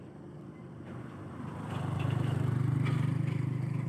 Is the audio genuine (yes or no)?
no